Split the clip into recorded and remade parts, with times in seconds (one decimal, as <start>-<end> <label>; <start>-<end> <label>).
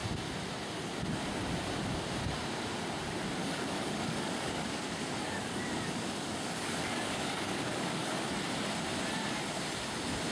0.0-3.4 recorded; 3.4-8.3 remade; 8.3-10.3 recorded